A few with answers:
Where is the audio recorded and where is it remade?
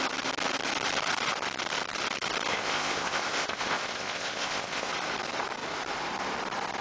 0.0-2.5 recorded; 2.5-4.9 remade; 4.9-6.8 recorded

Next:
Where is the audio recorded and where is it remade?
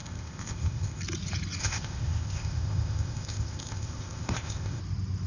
0.0-1.0 remade; 1.0-1.6 recorded; 1.6-4.8 remade; 4.8-5.3 recorded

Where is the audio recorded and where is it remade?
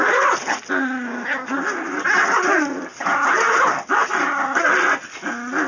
0.0-5.7 recorded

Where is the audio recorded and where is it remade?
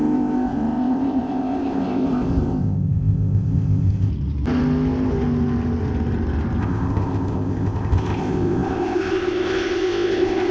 0.0-4.1 remade; 4.1-6.6 recorded; 6.6-10.5 remade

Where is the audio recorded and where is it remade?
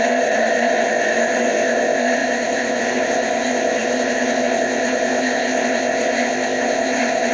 0.0-7.3 remade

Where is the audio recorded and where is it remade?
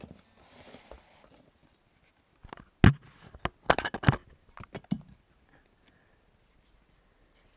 0.0-7.6 recorded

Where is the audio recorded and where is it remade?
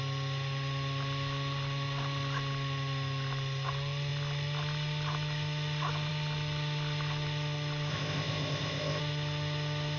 0.0-7.9 recorded; 7.9-9.0 remade; 9.0-10.0 recorded